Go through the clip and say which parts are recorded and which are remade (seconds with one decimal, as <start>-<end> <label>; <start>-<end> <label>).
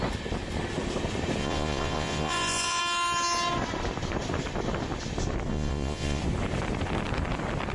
0.0-1.4 recorded; 1.4-2.8 remade; 2.8-5.5 recorded; 5.5-6.2 remade; 6.2-7.7 recorded